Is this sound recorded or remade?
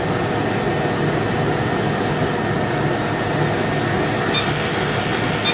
recorded